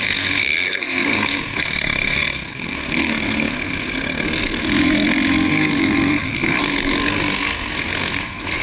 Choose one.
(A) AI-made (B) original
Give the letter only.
A